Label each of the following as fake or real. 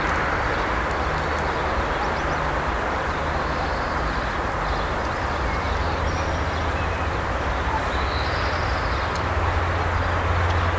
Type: real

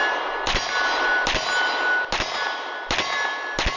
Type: real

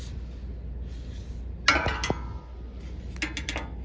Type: real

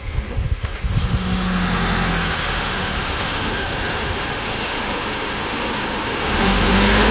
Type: fake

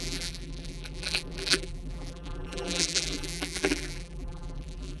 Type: fake